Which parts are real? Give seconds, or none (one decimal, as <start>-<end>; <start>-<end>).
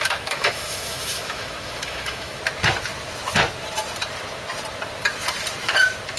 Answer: 2.4-6.2